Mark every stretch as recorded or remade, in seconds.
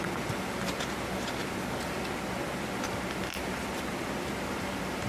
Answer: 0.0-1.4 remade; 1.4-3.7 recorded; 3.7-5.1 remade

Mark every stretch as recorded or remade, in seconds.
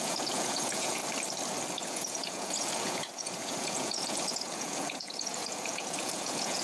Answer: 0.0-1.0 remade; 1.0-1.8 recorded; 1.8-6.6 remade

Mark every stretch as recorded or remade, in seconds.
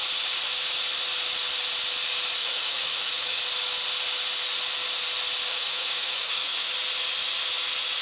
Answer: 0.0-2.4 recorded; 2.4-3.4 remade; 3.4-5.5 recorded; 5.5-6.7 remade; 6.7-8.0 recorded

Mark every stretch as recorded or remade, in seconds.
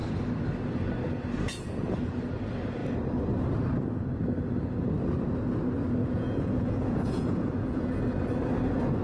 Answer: 0.0-6.0 recorded; 6.0-8.0 remade; 8.0-9.0 recorded